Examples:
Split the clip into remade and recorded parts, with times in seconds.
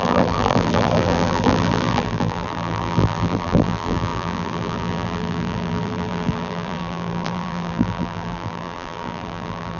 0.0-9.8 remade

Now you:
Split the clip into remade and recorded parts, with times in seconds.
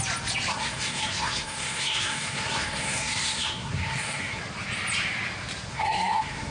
0.0-0.5 recorded; 0.5-4.4 remade; 4.4-5.7 recorded; 5.7-6.5 remade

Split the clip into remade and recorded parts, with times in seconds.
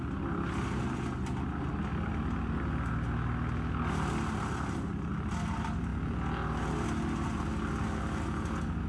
0.0-8.9 recorded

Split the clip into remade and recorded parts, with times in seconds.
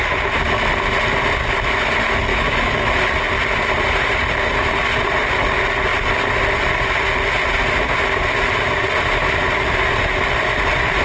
0.0-2.3 recorded; 2.3-2.9 remade; 2.9-11.0 recorded